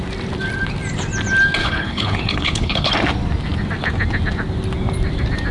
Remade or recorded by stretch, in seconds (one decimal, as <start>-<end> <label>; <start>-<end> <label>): 0.0-1.6 recorded; 1.6-2.9 remade; 2.9-5.5 recorded